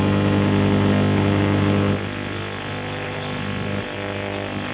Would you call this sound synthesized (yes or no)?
no